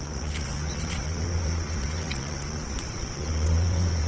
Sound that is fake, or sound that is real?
fake